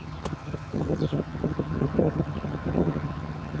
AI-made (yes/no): yes